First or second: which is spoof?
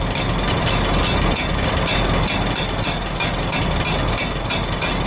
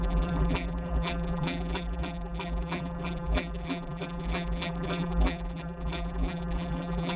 second